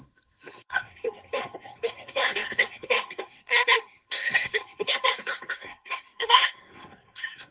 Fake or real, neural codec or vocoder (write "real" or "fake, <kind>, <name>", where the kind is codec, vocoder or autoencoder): fake, codec, SNAC